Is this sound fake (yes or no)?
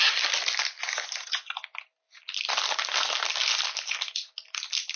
no